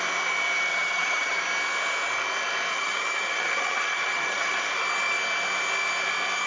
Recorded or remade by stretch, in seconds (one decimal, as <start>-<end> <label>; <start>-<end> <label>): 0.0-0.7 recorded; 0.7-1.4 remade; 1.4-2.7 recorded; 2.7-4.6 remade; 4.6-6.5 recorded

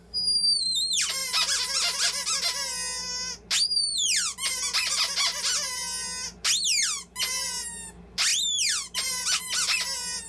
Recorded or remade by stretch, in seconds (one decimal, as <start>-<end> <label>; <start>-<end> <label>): 0.0-10.3 recorded

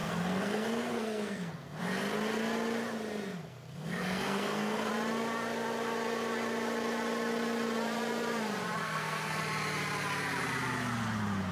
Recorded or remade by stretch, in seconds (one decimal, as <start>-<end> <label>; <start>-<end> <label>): 0.0-1.8 remade; 1.8-3.3 recorded; 3.3-4.9 remade; 4.9-8.8 recorded; 8.8-9.4 remade; 9.4-11.5 recorded

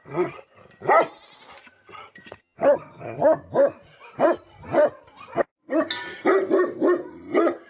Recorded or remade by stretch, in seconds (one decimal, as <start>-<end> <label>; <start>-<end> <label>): 0.0-0.6 remade; 0.6-1.6 recorded; 1.6-3.4 remade; 3.4-7.7 recorded

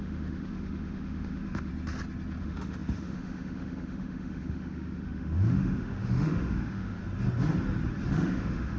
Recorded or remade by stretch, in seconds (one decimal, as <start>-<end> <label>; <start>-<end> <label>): 0.0-1.7 remade; 1.7-2.4 recorded; 2.4-7.0 remade; 7.0-8.1 recorded; 8.1-8.8 remade